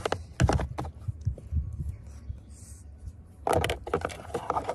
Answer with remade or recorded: recorded